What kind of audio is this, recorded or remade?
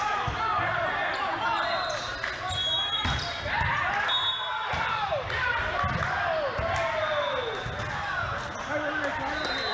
recorded